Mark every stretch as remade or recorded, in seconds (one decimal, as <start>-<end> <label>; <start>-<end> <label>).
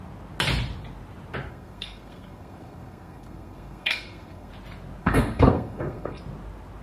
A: 0.0-1.5 recorded; 1.5-4.5 remade; 4.5-5.0 recorded; 5.0-6.2 remade; 6.2-6.8 recorded